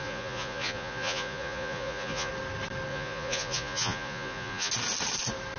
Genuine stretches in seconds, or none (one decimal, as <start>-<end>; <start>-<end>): 2.3-2.9; 4.7-5.6